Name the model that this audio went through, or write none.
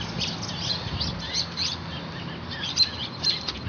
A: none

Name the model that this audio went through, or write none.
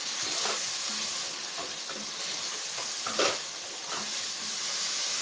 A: none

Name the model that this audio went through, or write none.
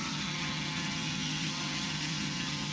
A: vocoder, HiFi-GAN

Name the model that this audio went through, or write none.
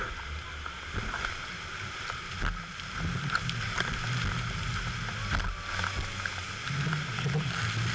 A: none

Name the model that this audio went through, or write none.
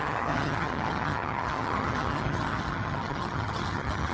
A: vocoder, HiFi-GAN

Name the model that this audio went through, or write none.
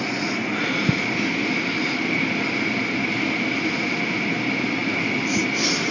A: none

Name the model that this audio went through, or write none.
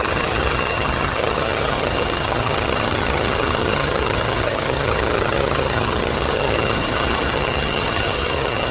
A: vocoder, HiFi-GAN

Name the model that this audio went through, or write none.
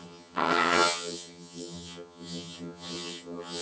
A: vocoder, HiFi-GAN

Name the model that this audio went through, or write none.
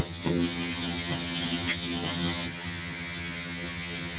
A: vocoder, HiFi-GAN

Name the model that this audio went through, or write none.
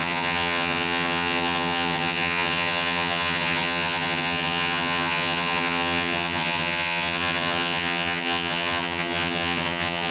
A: vocoder, HiFi-GAN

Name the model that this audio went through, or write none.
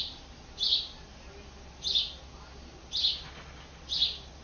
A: none